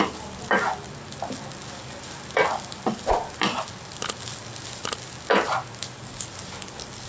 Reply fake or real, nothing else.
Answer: real